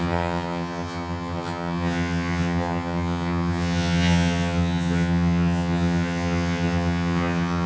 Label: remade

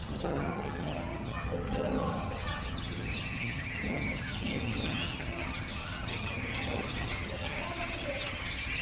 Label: remade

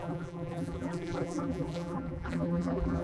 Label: remade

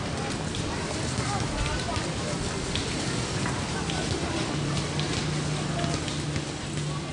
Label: recorded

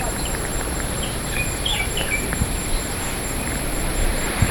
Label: remade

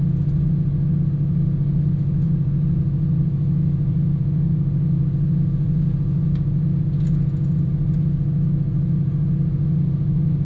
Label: remade